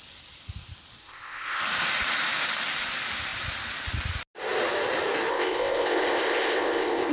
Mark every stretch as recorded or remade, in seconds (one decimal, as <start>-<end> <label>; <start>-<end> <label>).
0.0-1.0 recorded; 1.0-1.6 remade; 1.6-5.3 recorded; 5.3-7.1 remade